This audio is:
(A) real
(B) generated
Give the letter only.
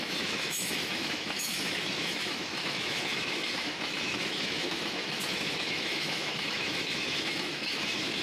B